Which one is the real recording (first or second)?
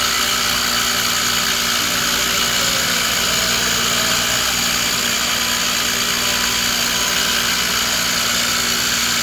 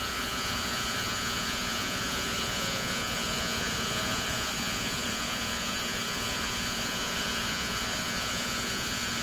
first